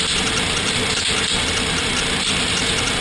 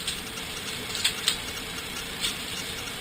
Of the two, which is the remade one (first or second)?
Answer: second